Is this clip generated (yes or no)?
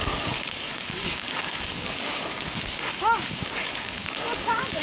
yes